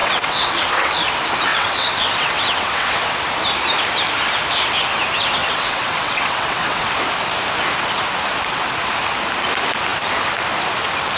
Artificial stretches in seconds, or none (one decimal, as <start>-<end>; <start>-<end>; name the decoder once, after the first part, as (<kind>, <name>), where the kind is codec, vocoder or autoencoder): 0.0-0.9 (vocoder, WaveNeXt); 1.5-3.2; 5.4-6.9